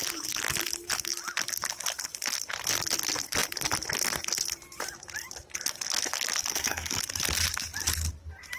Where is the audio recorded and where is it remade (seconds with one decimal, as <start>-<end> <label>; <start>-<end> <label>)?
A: 0.0-6.5 recorded; 6.5-7.0 remade; 7.0-8.6 recorded